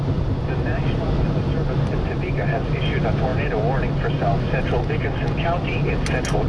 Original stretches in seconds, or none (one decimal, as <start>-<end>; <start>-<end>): 0.0-6.5